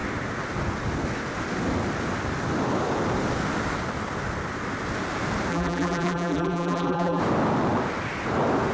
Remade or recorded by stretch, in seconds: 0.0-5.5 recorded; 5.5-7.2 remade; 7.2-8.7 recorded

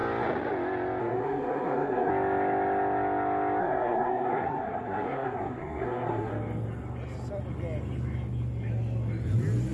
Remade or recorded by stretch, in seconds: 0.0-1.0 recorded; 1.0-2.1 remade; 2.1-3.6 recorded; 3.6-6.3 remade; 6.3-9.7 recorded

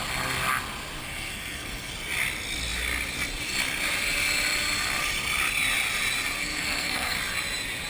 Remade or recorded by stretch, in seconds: 0.0-1.0 recorded; 1.0-1.9 remade; 1.9-6.4 recorded; 6.4-7.2 remade; 7.2-7.9 recorded